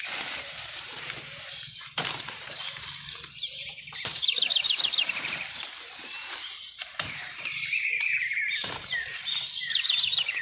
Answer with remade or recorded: remade